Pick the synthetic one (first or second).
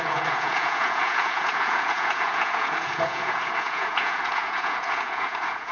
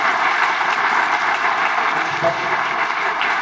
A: first